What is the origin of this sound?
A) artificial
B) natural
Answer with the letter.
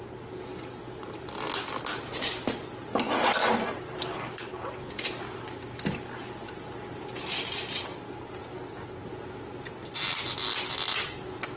B